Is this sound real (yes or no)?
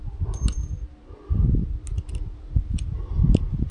yes